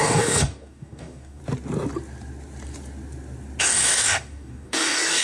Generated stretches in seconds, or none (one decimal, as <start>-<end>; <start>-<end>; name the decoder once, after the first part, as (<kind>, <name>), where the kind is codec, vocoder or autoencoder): 0.0-1.4 (codec, DAC); 3.6-5.2